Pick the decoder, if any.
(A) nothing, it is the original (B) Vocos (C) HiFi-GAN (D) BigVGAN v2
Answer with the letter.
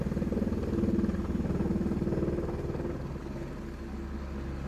A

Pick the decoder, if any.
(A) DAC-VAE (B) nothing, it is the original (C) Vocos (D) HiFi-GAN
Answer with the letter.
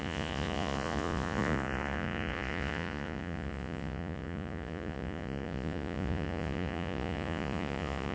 C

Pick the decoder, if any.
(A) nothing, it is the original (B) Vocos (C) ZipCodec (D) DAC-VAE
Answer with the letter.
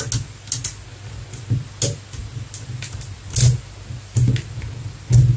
A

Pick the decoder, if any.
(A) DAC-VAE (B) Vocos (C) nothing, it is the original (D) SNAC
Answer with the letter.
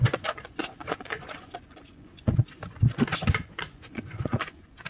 B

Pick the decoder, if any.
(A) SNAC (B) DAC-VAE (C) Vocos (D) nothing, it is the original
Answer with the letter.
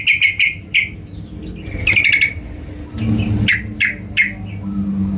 D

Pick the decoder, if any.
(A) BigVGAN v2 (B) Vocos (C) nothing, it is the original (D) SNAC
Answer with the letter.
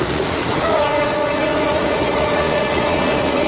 B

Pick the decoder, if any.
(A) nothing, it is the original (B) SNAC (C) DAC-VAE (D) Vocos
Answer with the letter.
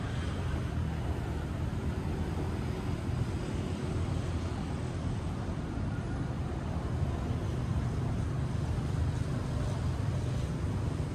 A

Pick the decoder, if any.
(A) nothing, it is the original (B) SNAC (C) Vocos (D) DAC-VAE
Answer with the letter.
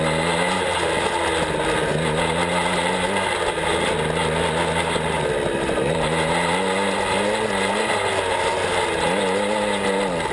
A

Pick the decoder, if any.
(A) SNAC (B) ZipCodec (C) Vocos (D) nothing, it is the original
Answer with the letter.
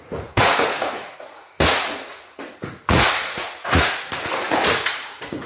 C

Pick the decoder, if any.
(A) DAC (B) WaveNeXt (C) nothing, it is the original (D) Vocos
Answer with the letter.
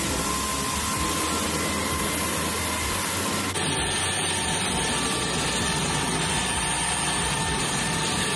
C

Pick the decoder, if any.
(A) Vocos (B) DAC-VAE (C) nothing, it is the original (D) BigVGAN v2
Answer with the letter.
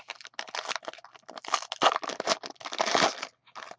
C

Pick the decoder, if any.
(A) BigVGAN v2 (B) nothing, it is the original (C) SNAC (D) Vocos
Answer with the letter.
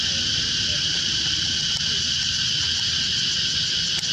B